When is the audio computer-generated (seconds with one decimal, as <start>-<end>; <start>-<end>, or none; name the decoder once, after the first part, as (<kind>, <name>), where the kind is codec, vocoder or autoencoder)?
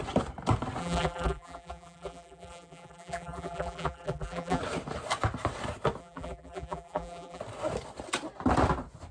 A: 0.8-4.6 (vocoder, BigVGAN v2); 6.0-7.4